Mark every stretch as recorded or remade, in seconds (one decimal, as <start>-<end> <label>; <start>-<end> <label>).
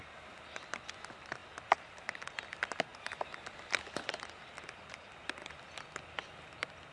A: 0.0-6.9 recorded